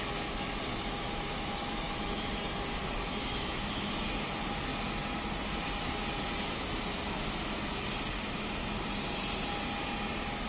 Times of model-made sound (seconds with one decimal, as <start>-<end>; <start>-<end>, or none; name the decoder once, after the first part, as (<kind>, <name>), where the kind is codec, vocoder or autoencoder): 0.7-2.4 (autoencoder, DAC-VAE); 3.1-3.9